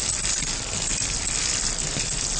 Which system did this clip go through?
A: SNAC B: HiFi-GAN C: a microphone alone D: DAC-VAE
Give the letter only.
C